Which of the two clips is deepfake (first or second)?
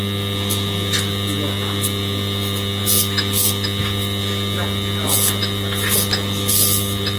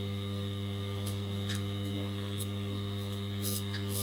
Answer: second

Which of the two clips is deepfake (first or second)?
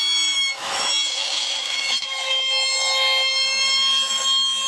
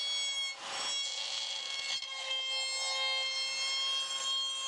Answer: first